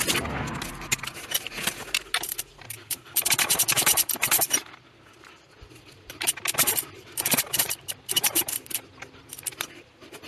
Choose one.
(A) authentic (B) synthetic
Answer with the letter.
A